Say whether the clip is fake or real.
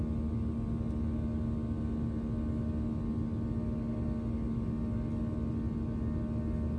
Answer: real